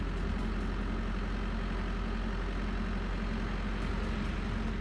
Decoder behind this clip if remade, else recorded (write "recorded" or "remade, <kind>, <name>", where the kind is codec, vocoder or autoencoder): recorded